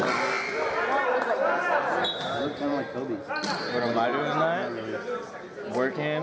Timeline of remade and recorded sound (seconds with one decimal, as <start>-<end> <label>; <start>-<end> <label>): 0.0-6.2 recorded